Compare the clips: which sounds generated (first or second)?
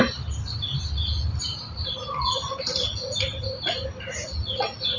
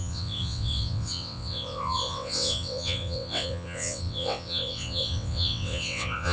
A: second